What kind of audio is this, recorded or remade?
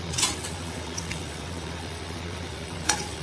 remade